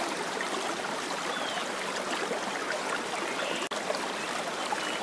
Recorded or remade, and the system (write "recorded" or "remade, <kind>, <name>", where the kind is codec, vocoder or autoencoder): recorded